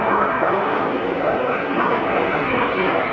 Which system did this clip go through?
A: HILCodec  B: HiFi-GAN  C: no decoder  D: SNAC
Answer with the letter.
D